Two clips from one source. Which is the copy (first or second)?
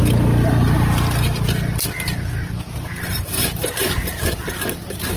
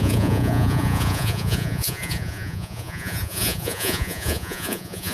second